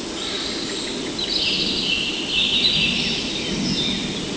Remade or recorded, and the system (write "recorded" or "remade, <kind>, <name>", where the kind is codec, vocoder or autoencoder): recorded